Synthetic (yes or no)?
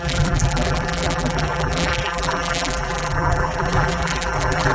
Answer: yes